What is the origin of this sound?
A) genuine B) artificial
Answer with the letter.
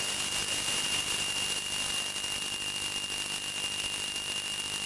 B